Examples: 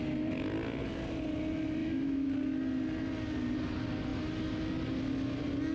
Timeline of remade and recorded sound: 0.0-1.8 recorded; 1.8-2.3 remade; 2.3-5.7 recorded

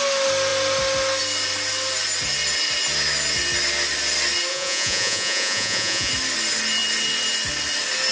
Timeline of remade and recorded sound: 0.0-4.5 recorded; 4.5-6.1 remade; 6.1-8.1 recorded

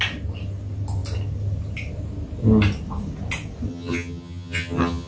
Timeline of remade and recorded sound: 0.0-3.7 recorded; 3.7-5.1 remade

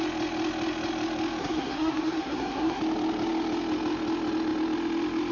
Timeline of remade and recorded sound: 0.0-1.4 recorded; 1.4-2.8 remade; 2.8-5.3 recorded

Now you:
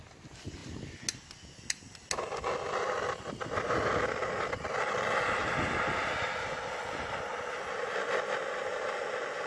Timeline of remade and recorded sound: 0.0-9.5 recorded

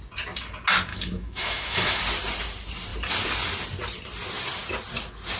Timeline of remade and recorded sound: 0.0-0.9 recorded; 0.9-2.0 remade; 2.0-5.4 recorded

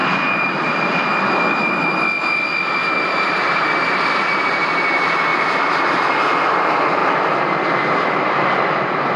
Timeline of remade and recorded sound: 0.0-0.7 remade; 0.7-2.8 recorded; 2.8-3.9 remade; 3.9-5.3 recorded; 5.3-6.1 remade; 6.1-9.2 recorded

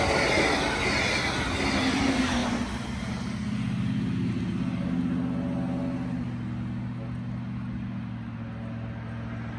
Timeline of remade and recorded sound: 0.0-9.6 recorded